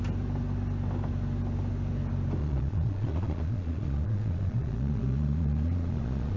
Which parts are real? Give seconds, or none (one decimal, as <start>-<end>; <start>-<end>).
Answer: 0.0-2.4